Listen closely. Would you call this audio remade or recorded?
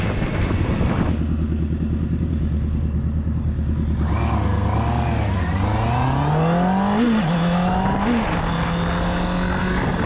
recorded